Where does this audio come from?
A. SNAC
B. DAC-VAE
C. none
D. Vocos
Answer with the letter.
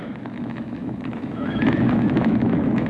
B